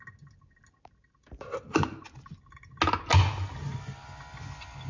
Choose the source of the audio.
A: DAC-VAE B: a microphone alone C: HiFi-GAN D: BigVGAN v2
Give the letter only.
B